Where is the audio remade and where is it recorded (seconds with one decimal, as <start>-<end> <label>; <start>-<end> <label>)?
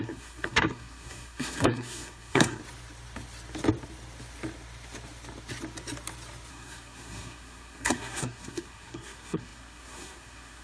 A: 0.0-2.6 remade; 2.6-6.5 recorded; 6.5-10.6 remade